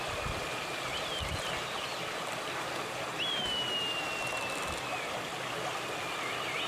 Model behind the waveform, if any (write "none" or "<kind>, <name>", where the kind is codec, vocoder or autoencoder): none